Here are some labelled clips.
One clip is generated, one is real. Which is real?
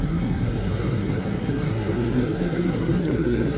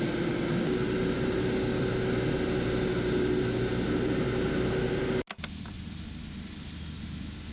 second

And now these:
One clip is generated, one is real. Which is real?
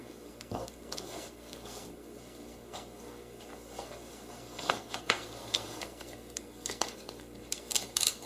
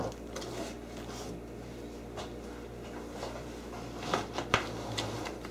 second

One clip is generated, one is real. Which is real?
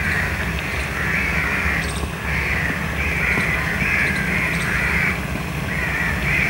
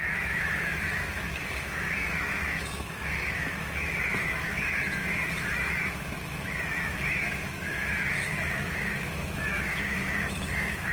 first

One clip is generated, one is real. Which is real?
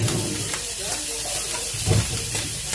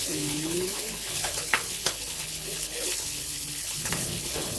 first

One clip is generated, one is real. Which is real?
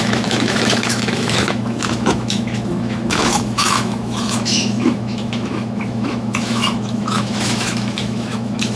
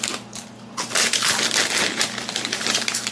second